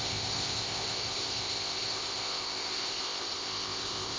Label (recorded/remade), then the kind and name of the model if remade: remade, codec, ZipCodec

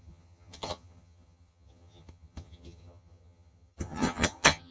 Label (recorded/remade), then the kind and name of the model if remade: remade, vocoder, HiFi-GAN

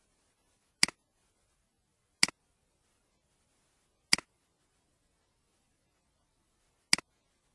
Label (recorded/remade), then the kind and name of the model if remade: recorded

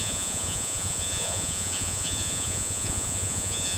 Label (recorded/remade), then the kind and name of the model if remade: remade, vocoder, Vocos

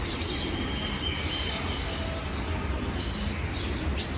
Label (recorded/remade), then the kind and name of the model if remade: recorded